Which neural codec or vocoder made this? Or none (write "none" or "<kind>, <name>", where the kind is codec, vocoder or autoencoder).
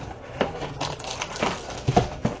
none